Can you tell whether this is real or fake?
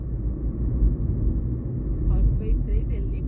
real